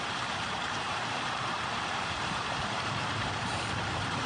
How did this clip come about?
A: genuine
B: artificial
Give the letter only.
B